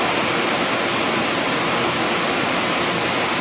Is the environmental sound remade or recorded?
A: recorded